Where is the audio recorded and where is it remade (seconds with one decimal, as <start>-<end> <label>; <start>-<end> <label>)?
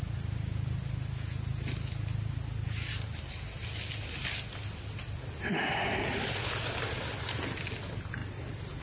0.0-8.8 recorded